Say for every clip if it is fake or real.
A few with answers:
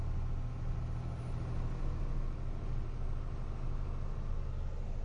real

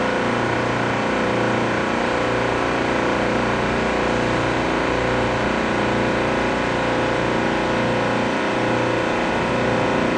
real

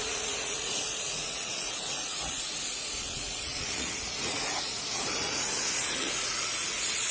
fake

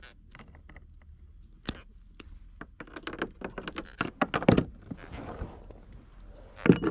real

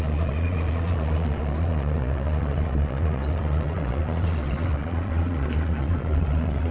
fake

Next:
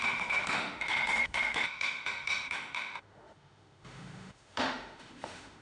fake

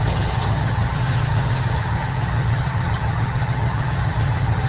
fake